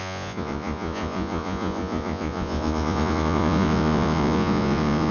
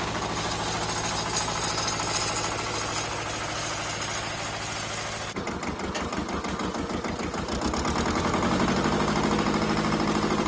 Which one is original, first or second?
second